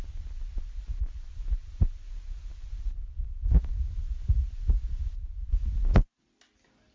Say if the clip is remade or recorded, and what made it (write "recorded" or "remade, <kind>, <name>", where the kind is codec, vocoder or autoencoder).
recorded